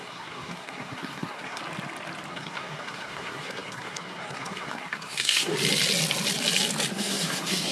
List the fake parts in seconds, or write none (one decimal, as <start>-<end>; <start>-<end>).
0.0-1.6; 2.3-5.5; 6.9-7.7